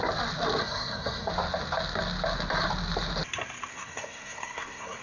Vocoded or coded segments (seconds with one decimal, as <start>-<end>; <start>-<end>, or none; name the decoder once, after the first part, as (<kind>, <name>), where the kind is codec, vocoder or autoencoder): 0.6-1.3 (codec, SNAC); 3.7-5.0